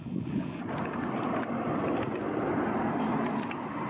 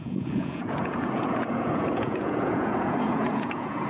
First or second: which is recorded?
first